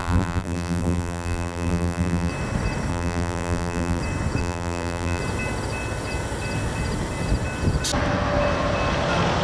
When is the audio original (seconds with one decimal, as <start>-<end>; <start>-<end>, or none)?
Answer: 2.3-2.9; 4.0-4.4; 5.2-9.4